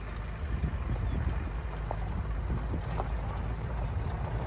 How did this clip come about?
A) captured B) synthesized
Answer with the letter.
A